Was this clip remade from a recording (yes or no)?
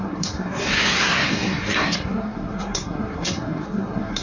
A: yes